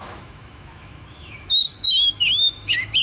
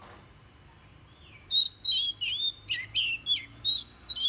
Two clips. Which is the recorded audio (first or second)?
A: second